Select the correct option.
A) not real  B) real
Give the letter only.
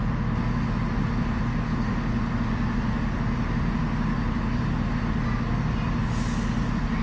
B